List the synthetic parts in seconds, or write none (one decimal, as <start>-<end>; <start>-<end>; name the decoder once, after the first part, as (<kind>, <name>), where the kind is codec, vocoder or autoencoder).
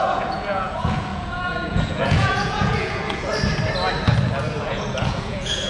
0.0-3.3 (vocoder, Vocos); 4.6-5.7